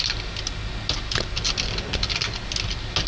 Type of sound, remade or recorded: recorded